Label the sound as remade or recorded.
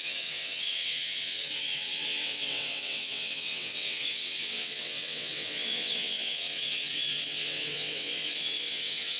remade